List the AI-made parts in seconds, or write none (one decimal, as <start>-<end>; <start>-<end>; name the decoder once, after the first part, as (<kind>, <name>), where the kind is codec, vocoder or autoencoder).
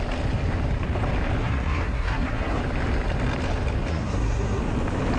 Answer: 1.4-2.6 (codec, SNAC); 3.9-4.6